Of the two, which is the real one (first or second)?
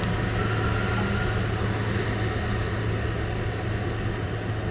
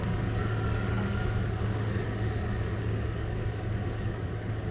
first